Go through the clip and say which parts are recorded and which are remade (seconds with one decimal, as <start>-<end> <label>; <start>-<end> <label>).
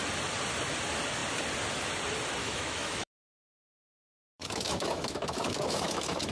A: 0.0-2.4 recorded; 2.4-3.3 remade; 3.3-4.0 recorded; 4.0-6.3 remade